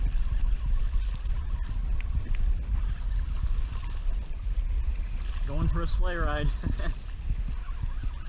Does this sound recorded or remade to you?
recorded